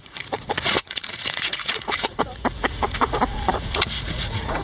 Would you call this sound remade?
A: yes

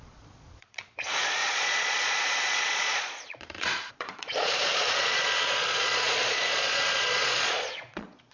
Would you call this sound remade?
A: yes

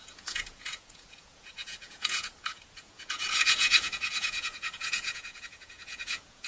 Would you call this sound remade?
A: yes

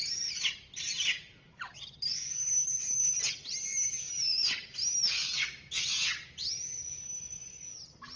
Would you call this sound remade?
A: no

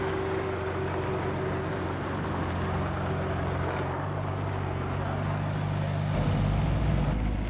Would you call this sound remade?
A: no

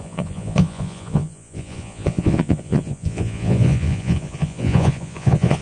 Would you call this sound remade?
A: yes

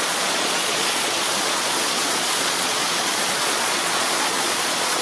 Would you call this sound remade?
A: yes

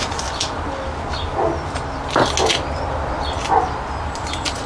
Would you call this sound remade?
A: no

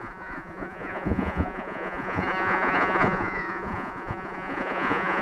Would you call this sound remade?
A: yes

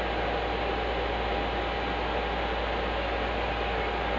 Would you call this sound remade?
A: no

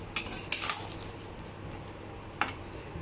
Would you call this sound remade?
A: no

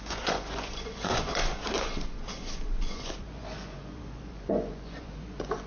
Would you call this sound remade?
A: yes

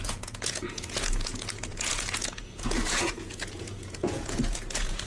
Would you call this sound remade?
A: yes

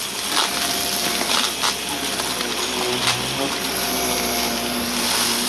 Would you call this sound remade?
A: no